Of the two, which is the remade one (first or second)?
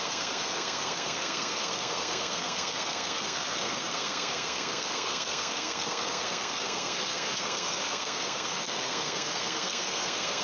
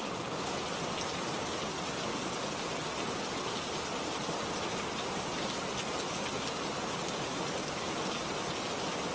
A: first